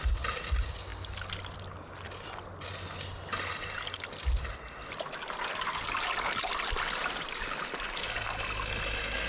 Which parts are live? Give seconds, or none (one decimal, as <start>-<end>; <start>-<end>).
0.0-9.3